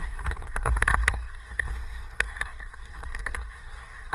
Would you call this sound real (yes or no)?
no